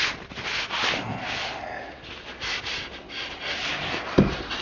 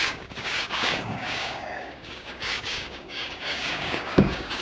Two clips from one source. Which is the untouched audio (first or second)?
first